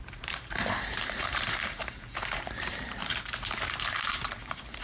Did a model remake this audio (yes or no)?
yes